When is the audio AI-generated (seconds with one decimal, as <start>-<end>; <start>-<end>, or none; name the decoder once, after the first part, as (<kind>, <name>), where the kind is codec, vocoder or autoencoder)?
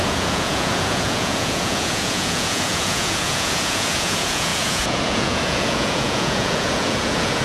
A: 0.0-7.4 (vocoder, Vocos)